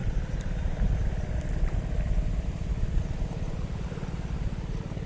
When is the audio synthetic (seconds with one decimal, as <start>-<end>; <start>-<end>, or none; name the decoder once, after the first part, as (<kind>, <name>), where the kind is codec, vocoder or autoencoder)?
none